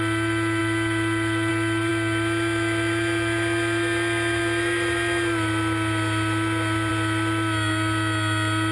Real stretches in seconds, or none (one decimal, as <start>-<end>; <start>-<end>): 0.0-8.7